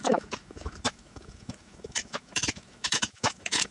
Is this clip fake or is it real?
fake